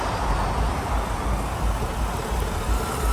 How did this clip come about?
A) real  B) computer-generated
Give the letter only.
A